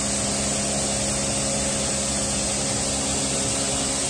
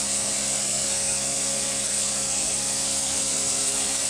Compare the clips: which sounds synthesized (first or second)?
second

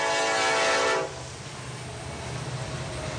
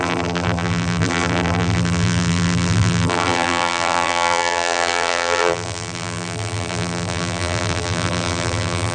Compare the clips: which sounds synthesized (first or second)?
second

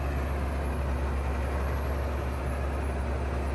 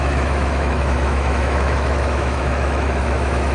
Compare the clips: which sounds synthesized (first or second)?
second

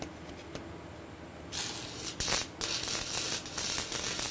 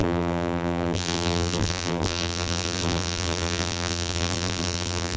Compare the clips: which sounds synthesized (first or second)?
second